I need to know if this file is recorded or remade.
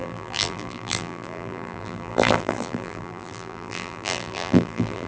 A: remade